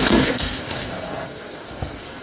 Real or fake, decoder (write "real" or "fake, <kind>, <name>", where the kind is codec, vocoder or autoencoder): fake, codec, SNAC